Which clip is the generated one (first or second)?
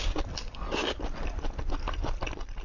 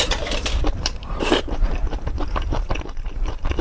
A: second